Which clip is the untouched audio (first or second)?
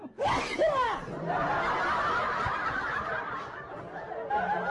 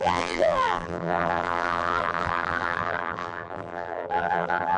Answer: first